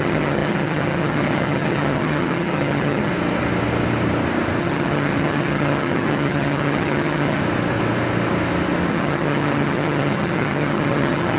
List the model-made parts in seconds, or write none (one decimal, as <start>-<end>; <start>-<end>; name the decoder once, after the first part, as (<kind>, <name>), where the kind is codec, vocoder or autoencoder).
0.0-3.1 (vocoder, HiFi-GAN); 4.6-7.4; 8.9-11.4